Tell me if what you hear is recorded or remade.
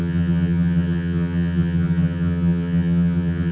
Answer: remade